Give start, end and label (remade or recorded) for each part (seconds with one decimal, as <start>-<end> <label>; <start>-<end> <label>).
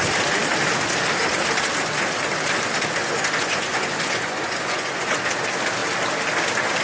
0.0-3.0 recorded; 3.0-5.2 remade; 5.2-6.8 recorded